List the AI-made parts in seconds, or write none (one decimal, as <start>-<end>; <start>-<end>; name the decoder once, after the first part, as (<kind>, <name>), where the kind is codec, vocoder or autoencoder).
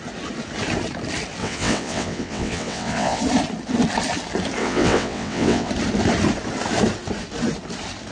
1.4-3.2 (vocoder, WaveNeXt); 4.6-5.7